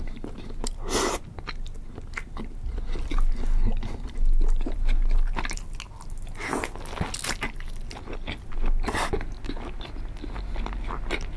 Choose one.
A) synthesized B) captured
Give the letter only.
B